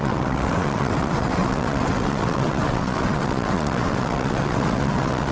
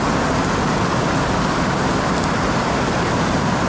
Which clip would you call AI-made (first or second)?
first